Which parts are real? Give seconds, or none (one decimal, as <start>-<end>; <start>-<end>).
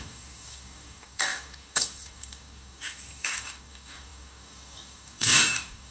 none